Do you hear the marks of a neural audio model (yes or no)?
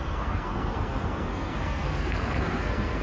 yes